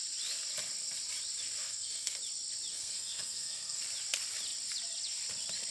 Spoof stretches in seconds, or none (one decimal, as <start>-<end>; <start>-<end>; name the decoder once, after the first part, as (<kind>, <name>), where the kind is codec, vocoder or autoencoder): 1.6-2.2 (codec, SNAC); 2.7-3.8